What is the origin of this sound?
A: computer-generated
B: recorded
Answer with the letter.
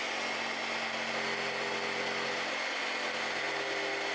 B